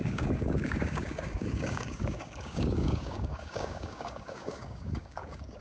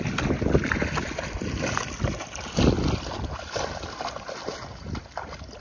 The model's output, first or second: first